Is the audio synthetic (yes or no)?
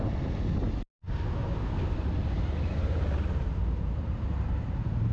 no